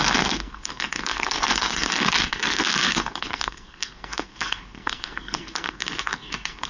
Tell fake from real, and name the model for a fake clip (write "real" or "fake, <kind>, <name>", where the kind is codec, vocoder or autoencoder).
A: fake, codec, SNAC